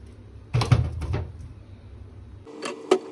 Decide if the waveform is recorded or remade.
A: recorded